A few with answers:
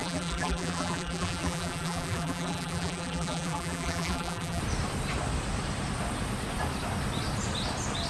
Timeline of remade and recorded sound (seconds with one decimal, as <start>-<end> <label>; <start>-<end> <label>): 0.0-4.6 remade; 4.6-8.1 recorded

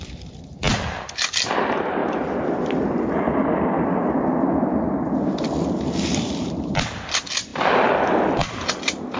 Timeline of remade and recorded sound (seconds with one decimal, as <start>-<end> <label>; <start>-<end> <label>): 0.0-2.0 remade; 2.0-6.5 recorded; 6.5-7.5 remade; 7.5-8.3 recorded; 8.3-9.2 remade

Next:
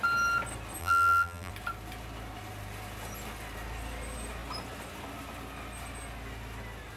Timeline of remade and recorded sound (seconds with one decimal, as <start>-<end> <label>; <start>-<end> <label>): 0.0-0.8 recorded; 0.8-1.5 remade; 1.5-7.0 recorded